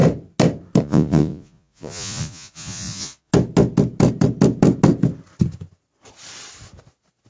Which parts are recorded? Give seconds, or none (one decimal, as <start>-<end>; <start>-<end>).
0.0-0.8; 3.3-7.3